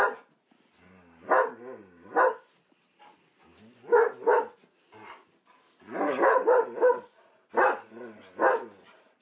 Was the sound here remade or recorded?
recorded